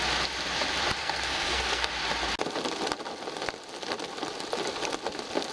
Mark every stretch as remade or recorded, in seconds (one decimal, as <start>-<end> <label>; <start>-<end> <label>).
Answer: 0.0-1.0 recorded; 1.0-1.9 remade; 1.9-5.5 recorded